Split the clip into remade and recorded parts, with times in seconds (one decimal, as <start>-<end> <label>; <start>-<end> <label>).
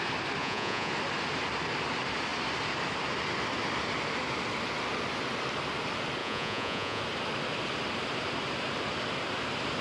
0.0-0.4 recorded; 0.4-0.9 remade; 0.9-6.2 recorded; 6.2-7.0 remade; 7.0-9.8 recorded